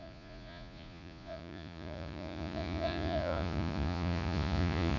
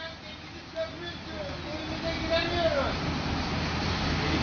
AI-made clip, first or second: first